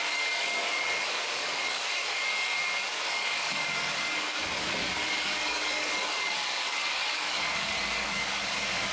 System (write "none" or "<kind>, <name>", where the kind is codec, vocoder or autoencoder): codec, DAC